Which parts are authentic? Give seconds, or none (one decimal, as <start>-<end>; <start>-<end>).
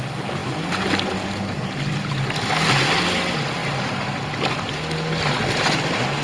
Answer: 0.0-3.6; 4.2-6.2